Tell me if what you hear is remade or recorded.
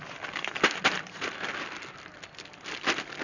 recorded